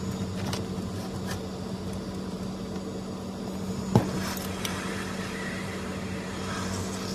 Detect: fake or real real